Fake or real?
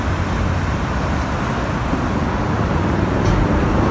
real